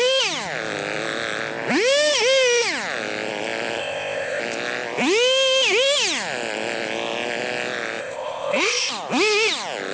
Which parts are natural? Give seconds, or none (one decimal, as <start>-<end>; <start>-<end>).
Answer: 0.0-3.8; 4.4-8.0; 8.9-9.9